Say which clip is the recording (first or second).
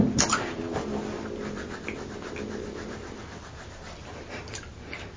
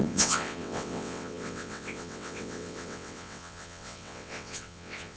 first